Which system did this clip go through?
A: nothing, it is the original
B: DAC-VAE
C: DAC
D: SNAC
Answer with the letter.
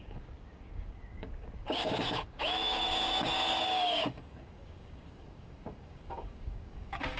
C